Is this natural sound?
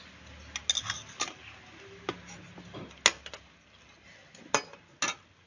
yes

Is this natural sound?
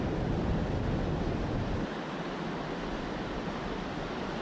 yes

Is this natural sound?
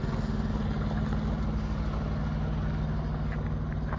yes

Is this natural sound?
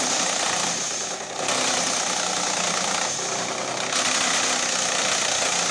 yes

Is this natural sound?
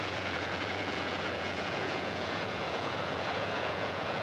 no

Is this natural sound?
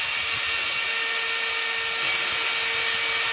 yes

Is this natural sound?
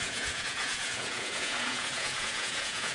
no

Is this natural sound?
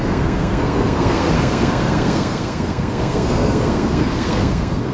no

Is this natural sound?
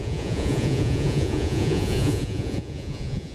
no